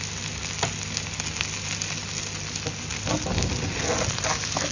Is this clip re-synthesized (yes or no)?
no